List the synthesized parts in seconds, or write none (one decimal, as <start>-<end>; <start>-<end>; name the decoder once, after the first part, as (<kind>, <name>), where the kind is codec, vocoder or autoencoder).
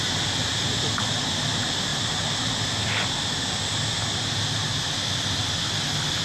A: 1.9-2.6 (vocoder, BigVGAN v2)